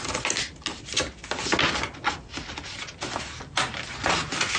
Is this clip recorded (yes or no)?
yes